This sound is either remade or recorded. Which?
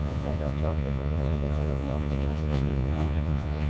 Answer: remade